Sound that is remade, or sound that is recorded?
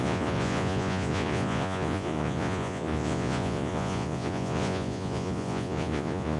remade